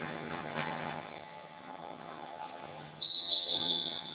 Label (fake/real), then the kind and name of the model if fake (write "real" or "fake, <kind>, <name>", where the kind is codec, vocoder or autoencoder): fake, vocoder, HiFi-GAN